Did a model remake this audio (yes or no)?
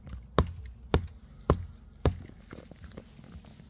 no